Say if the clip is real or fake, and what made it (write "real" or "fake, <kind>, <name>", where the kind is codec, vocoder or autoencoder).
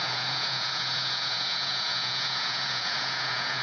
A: fake, vocoder, Vocos